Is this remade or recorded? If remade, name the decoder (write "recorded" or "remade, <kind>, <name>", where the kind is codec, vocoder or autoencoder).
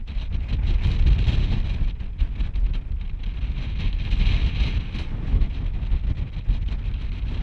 recorded